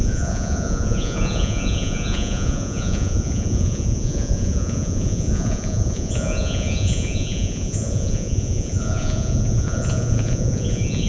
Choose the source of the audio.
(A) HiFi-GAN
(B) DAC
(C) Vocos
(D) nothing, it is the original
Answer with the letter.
C